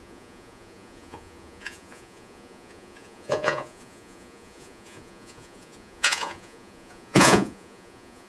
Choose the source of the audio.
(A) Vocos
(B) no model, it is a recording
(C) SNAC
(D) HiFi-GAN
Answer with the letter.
A